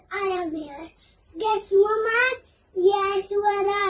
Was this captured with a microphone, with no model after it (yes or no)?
no